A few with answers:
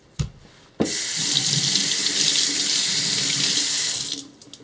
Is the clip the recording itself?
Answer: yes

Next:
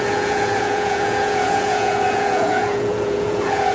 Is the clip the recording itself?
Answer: no